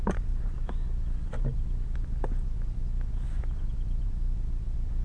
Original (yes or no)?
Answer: no